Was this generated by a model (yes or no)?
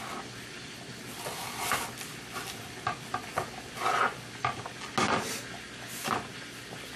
no